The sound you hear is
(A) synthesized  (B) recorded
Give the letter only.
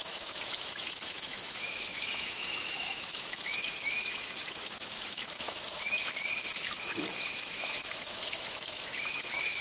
A